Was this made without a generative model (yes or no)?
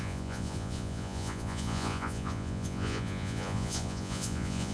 no